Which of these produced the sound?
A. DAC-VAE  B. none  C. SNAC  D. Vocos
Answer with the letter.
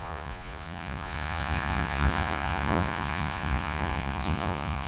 D